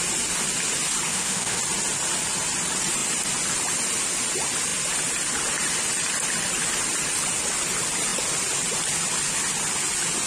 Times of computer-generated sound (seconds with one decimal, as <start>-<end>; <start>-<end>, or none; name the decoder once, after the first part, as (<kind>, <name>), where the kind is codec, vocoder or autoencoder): 1.1-1.6 (autoencoder, DAC-VAE)